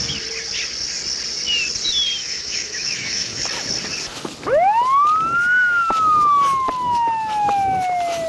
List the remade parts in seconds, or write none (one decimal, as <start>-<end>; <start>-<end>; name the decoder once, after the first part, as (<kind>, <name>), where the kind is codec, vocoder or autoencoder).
2.2-3.4 (autoencoder, DAC-VAE)